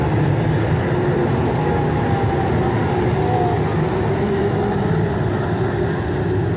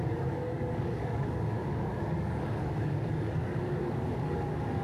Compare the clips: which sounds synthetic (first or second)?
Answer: second